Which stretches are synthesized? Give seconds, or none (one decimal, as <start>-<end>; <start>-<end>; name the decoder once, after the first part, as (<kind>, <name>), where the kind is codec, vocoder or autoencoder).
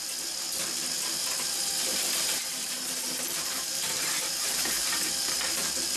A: 1.9-5.1 (vocoder, BigVGAN v2)